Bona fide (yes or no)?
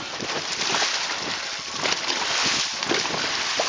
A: yes